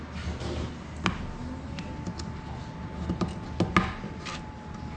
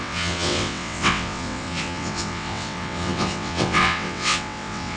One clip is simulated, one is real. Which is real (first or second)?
first